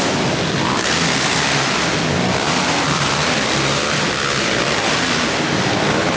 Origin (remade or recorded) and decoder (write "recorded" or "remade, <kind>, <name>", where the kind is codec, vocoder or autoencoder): recorded